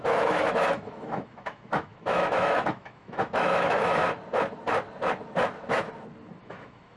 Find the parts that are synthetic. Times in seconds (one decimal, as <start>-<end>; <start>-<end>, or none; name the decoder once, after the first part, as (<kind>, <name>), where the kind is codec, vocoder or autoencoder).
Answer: 0.0-4.0 (autoencoder, DAC-VAE); 6.4-7.0